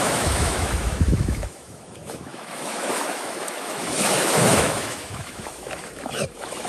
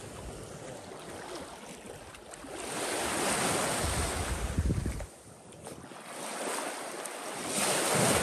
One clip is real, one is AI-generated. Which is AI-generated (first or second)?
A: first